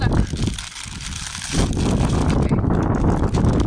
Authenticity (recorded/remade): recorded